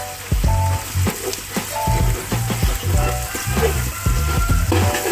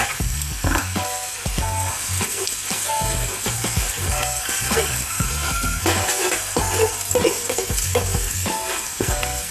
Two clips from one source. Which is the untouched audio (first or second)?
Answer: first